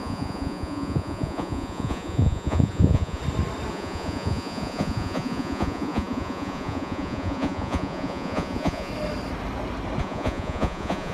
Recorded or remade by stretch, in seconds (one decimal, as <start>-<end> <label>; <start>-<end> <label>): 0.0-3.2 remade; 3.2-3.7 recorded; 3.7-8.9 remade; 8.9-10.0 recorded; 10.0-11.1 remade